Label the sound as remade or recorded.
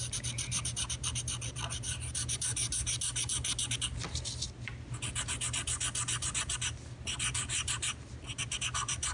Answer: recorded